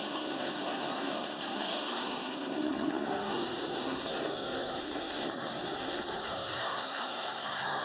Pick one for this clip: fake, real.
fake